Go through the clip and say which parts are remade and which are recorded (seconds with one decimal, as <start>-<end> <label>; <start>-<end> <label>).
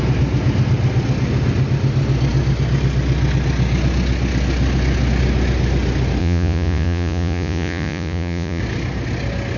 0.0-6.2 recorded; 6.2-8.6 remade; 8.6-9.6 recorded